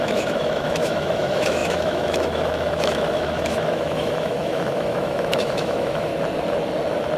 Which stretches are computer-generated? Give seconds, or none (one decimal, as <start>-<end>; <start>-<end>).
0.0-6.1